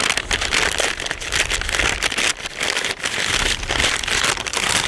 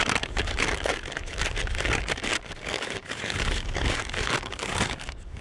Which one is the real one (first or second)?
first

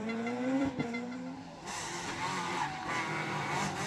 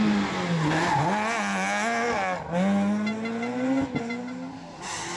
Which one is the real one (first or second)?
second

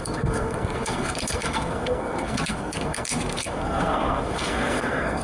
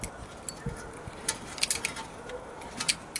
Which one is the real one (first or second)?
second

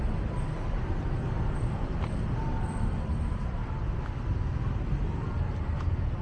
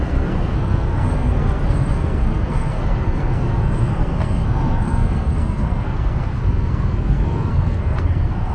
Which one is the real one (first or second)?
first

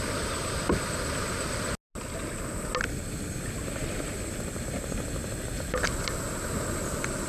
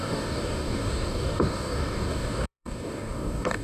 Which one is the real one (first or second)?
first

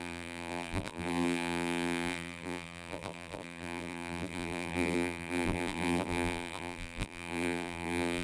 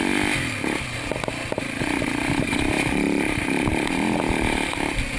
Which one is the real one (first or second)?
second